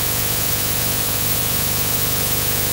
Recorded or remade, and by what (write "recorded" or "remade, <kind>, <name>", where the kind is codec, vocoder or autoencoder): remade, vocoder, Vocos